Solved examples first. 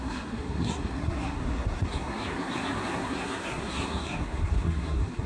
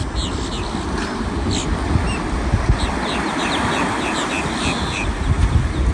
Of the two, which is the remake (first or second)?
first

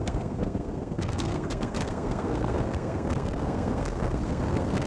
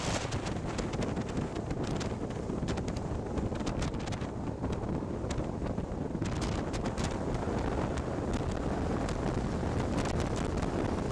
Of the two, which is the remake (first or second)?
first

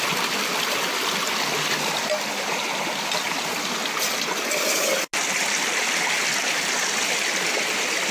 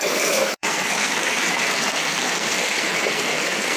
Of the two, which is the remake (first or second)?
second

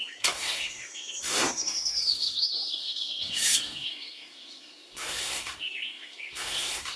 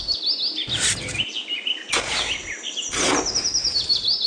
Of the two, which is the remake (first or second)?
first